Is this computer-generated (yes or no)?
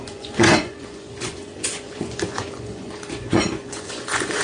yes